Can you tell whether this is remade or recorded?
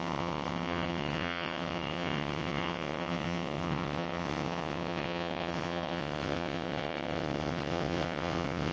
remade